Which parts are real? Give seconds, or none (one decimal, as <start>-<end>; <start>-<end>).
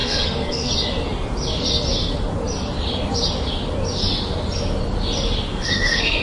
0.7-5.5